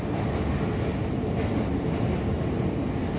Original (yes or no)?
yes